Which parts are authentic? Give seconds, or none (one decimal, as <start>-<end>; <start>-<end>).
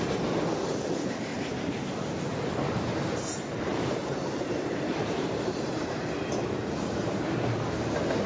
0.0-1.3; 2.2-3.7; 6.1-8.3